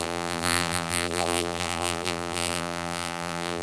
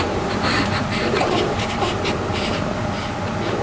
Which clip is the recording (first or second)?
second